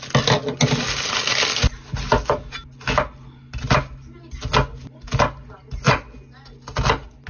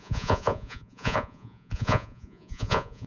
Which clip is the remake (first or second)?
second